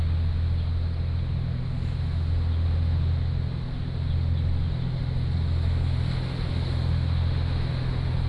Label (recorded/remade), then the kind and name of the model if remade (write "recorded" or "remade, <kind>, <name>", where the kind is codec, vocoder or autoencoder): recorded